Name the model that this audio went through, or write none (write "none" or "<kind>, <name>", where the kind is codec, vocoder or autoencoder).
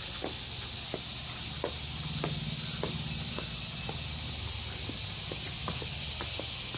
none